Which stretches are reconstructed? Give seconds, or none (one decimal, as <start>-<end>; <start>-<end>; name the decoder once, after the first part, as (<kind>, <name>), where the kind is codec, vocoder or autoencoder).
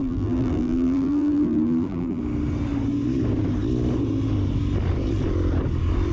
0.0-2.2 (vocoder, BigVGAN v2)